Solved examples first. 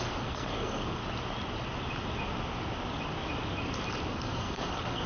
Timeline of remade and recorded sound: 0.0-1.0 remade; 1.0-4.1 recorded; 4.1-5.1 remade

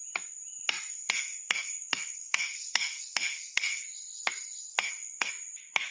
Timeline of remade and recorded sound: 0.0-0.9 recorded; 0.9-3.8 remade; 3.8-4.7 recorded; 4.7-5.3 remade; 5.3-5.9 recorded